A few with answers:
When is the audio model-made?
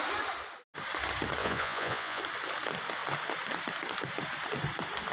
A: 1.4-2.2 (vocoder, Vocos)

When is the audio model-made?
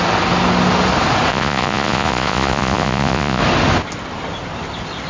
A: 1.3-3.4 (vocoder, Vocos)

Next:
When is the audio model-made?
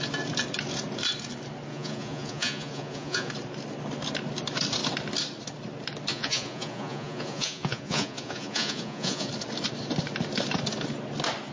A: 1.7-3.3 (vocoder, Vocos); 6.1-9.3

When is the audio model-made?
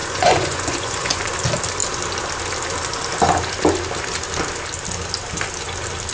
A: 0.0-1.3 (vocoder, Vocos)